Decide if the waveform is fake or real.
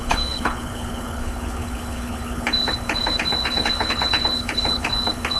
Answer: fake